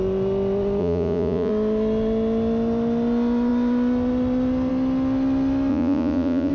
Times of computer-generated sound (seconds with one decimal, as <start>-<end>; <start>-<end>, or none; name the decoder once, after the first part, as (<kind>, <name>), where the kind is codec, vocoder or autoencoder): 0.8-1.5 (vocoder, Vocos); 5.7-6.5